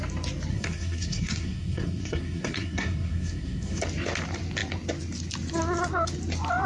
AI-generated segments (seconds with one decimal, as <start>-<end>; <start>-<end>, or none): 0.5-3.8